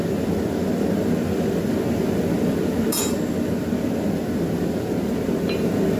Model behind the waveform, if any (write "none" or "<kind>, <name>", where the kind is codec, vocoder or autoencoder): none